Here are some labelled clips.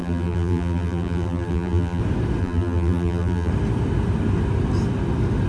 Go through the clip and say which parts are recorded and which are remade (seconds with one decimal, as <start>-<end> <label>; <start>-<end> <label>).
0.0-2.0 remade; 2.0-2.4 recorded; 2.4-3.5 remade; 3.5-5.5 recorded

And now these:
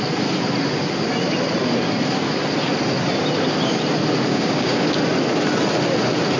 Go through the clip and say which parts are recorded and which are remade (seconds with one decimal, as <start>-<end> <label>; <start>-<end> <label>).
0.0-4.3 recorded; 4.3-5.0 remade; 5.0-6.4 recorded

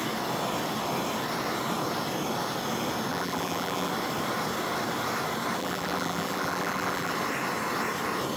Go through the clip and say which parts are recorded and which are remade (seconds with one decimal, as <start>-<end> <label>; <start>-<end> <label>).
0.0-3.1 recorded; 3.1-3.9 remade; 3.9-5.6 recorded; 5.6-7.1 remade; 7.1-8.4 recorded

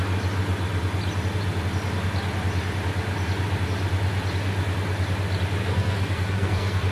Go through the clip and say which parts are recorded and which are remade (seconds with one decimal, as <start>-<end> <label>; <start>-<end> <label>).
0.0-5.6 recorded; 5.6-6.9 remade

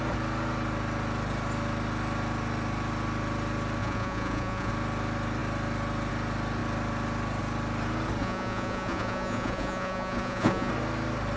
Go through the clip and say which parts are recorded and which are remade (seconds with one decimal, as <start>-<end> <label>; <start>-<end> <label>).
0.0-3.8 recorded; 3.8-4.7 remade; 4.7-8.2 recorded; 8.2-10.7 remade; 10.7-11.4 recorded